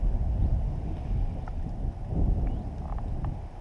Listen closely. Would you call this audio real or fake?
real